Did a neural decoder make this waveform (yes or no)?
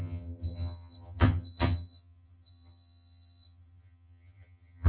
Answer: yes